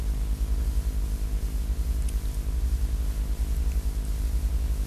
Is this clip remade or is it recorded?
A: recorded